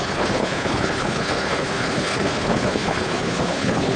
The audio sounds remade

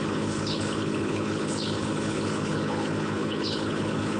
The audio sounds remade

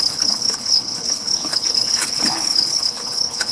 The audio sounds remade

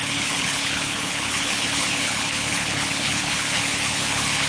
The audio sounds remade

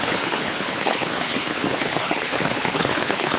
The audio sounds remade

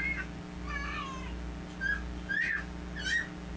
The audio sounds recorded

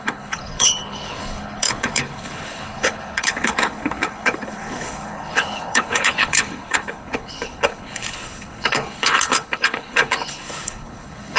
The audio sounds remade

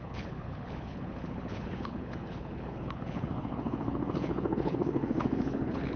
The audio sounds remade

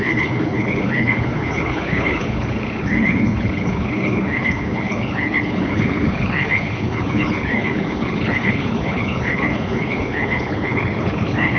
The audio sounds remade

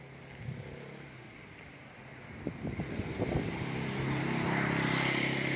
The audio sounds recorded